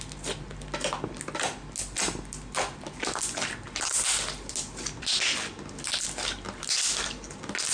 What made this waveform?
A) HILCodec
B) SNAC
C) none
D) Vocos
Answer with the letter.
C